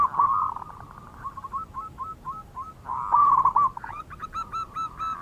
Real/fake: real